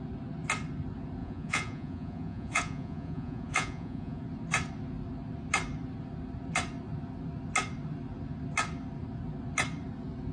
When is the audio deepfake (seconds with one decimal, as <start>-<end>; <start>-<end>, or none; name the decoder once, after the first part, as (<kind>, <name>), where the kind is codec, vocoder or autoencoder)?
1.2-4.2 (vocoder, Vocos)